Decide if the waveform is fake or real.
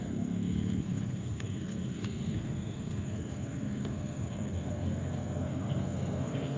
fake